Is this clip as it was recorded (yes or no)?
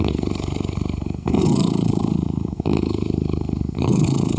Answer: no